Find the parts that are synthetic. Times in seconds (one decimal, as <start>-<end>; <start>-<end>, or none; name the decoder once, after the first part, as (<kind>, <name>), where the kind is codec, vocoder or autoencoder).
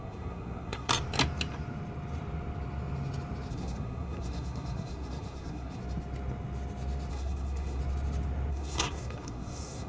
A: 0.0-0.9 (codec, SNAC); 3.5-5.8; 7.1-7.8; 8.5-9.9